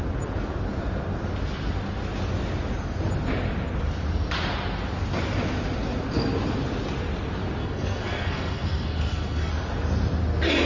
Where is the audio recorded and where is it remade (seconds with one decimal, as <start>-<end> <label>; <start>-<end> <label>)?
0.0-7.6 recorded; 7.6-9.5 remade; 9.5-10.7 recorded